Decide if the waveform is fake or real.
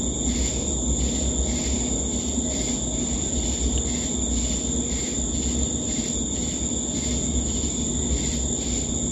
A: real